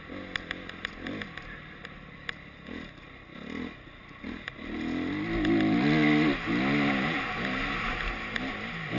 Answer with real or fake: real